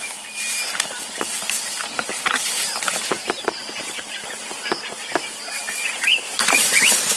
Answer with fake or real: fake